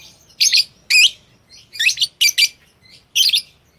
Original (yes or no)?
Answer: yes